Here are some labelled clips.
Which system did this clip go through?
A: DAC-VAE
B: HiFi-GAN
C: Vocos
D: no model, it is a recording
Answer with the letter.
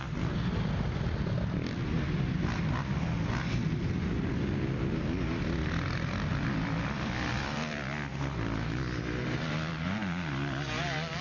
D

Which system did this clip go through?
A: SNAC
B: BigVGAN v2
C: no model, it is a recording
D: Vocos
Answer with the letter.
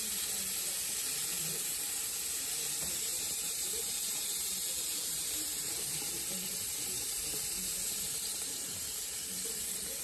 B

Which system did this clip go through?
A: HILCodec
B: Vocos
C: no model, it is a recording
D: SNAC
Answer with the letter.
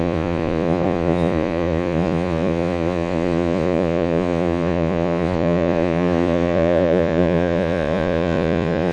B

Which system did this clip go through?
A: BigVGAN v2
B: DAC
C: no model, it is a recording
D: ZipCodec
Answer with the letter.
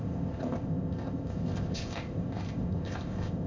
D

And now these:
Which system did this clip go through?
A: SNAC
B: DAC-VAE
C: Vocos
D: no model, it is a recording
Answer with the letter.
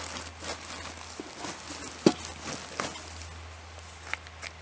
D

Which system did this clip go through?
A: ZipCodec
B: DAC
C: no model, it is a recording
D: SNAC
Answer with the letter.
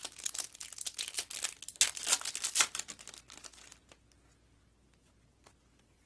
C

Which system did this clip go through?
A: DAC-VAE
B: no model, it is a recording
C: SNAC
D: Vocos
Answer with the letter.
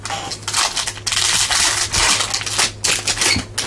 B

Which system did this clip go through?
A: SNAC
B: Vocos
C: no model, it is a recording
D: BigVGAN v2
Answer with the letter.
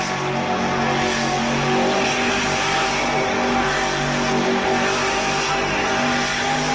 C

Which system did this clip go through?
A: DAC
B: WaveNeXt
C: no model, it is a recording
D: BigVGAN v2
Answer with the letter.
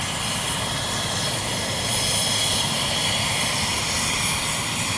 D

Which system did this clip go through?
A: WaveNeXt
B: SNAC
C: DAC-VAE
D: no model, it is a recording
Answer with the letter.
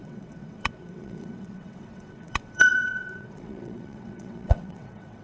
A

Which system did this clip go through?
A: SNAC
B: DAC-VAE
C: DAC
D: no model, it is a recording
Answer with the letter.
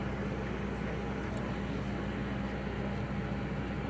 D